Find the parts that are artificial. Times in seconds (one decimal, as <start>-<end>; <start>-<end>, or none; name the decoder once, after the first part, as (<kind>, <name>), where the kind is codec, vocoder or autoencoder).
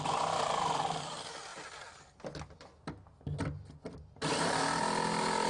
none